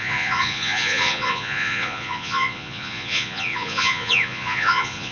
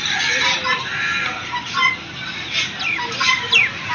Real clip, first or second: second